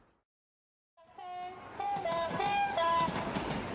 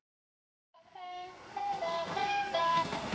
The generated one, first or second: second